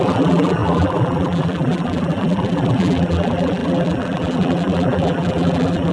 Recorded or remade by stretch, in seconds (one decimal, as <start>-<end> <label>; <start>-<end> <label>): 0.0-5.9 remade